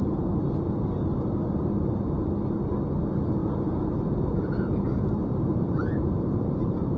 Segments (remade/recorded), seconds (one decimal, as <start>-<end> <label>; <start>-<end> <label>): 0.0-3.4 recorded; 3.4-7.0 remade